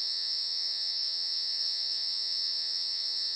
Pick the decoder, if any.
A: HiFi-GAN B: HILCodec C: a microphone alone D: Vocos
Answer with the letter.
D